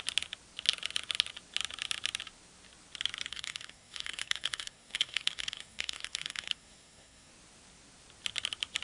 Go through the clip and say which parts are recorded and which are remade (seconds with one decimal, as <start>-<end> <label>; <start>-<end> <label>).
0.0-3.3 recorded; 3.3-7.3 remade; 7.3-8.8 recorded